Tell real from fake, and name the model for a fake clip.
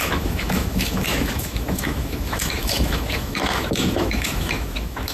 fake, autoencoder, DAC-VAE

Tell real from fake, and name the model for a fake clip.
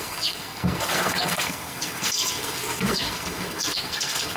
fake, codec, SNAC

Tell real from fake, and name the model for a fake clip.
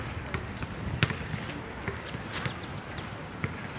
real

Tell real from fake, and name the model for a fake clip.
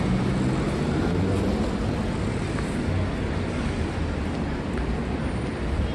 real